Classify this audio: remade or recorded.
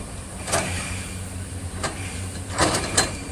remade